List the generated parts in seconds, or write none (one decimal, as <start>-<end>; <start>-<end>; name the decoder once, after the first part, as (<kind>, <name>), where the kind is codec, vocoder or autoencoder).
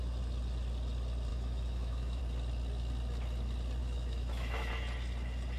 1.3-2.2 (autoencoder, DAC-VAE); 3.8-4.7